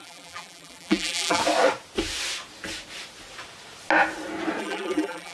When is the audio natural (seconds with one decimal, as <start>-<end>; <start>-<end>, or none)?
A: 1.4-4.6